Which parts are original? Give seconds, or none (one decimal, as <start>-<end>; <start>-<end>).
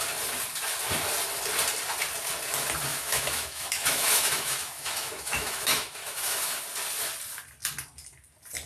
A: 0.0-2.9; 6.6-8.7